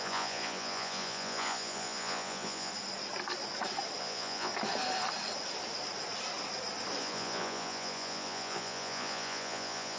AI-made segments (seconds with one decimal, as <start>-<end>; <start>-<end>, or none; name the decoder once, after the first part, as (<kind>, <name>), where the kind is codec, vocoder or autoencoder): 0.0-2.7 (vocoder, Vocos); 4.0-4.5; 7.0-10.0